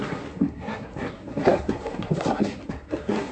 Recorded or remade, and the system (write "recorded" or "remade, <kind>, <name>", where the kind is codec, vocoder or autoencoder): remade, codec, SNAC